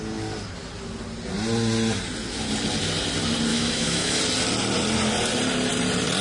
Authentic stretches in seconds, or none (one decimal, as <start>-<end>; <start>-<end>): 0.0-3.5; 4.2-6.2